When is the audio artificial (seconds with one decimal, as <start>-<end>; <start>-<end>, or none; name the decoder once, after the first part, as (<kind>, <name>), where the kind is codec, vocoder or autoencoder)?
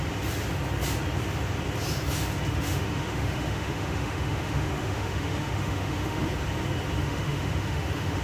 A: 2.5-6.3 (autoencoder, DAC-VAE); 7.0-8.2